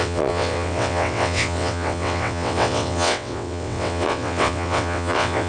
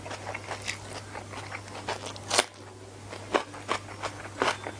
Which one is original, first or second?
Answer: second